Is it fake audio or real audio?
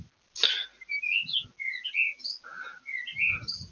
real